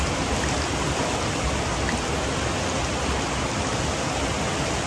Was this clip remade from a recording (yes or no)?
no